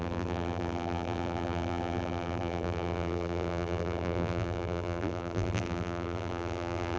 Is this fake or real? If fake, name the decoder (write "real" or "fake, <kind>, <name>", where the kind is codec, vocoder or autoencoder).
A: fake, vocoder, BigVGAN v2